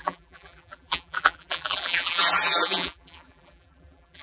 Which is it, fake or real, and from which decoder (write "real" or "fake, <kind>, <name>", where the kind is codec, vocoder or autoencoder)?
fake, vocoder, BigVGAN v2